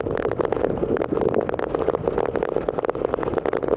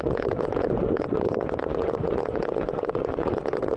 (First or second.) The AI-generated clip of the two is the second